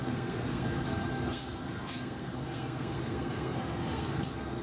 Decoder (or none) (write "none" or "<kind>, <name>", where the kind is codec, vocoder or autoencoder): codec, SNAC